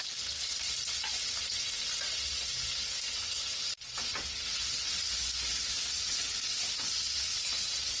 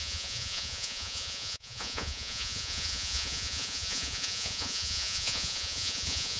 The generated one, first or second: second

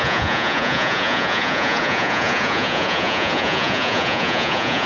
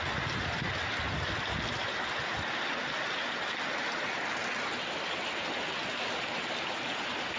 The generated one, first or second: first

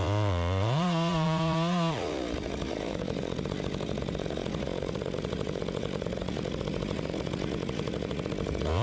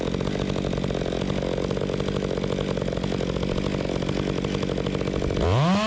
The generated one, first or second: first